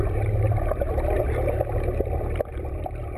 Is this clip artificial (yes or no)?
yes